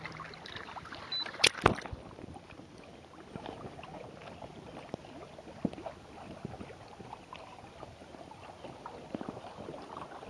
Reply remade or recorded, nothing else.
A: recorded